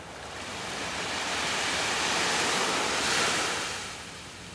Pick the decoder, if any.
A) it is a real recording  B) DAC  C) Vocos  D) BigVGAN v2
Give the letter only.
A